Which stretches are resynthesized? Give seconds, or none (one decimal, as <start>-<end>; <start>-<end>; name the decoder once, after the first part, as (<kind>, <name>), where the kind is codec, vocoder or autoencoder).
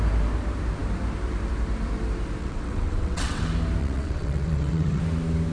2.4-3.4 (vocoder, WaveNeXt); 3.8-5.0